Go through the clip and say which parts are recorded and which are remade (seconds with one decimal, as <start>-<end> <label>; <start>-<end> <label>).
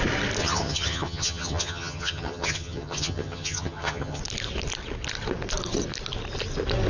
0.0-0.4 recorded; 0.4-4.2 remade; 4.2-6.9 recorded